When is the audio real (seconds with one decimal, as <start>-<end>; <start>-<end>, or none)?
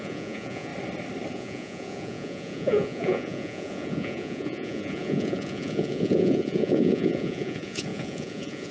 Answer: 0.7-1.3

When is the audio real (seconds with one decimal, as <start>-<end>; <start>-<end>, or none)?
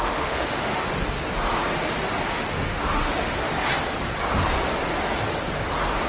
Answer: 0.9-2.5; 3.5-6.1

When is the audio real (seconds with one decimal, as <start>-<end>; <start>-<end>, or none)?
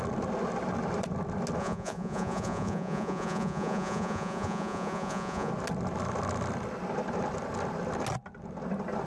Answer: 0.0-1.6; 5.5-9.1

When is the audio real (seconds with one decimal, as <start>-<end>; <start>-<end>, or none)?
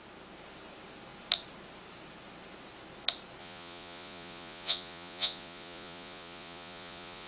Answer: 0.0-3.4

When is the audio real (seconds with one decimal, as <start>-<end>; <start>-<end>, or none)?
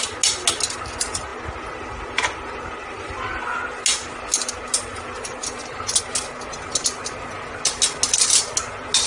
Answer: 0.0-9.1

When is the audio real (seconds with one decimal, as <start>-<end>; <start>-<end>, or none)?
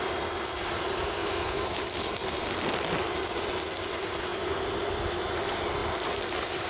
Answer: 0.0-1.2; 1.8-6.7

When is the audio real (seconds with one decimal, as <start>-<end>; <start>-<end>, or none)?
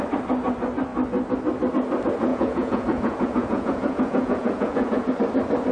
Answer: 0.0-2.3; 5.1-5.7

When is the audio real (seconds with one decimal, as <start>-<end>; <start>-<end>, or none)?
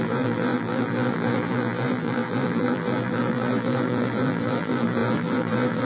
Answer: none